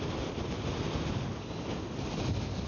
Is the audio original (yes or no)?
yes